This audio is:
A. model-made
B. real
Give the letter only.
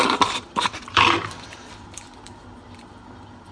A